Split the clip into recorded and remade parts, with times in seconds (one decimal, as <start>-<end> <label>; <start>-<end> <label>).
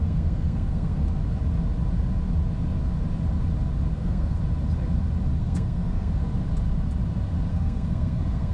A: 0.0-1.0 remade; 1.0-3.9 recorded; 3.9-4.4 remade; 4.4-5.4 recorded; 5.4-6.1 remade; 6.1-7.5 recorded; 7.5-8.5 remade